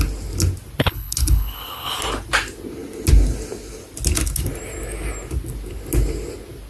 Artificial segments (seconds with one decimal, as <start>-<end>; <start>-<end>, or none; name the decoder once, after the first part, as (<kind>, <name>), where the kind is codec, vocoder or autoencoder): 0.8-2.0 (codec, HILCodec)

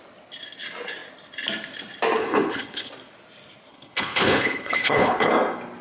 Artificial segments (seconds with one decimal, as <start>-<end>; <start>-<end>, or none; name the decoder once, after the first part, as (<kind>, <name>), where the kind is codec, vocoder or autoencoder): 2.2-2.9 (codec, HILCodec); 3.7-5.3

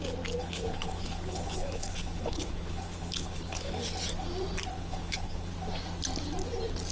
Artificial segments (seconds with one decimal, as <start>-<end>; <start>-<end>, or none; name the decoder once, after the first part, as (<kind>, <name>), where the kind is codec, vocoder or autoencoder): 0.4-3.8 (codec, HILCodec); 4.7-5.5

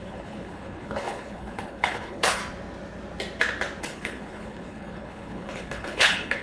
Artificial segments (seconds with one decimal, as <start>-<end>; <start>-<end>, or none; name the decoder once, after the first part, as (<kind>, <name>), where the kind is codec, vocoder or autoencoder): 0.0-2.4 (codec, HILCodec); 3.8-6.4

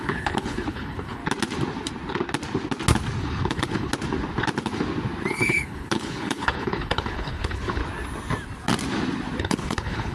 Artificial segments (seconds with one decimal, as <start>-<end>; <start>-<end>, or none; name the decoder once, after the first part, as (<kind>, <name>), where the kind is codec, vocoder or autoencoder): 0.0-1.2 (codec, HILCodec); 3.2-3.9; 5.3-7.8; 9.4-10.1